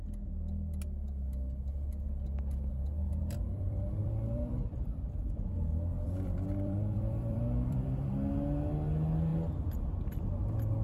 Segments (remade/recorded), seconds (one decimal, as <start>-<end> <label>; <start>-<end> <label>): 0.0-3.1 recorded; 3.1-8.1 remade; 8.1-10.8 recorded